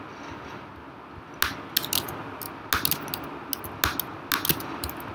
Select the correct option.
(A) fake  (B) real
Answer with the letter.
B